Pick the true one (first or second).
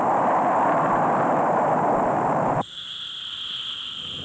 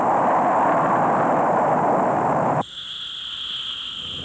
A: second